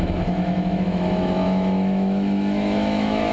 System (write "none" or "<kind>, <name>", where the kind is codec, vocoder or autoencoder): autoencoder, DAC-VAE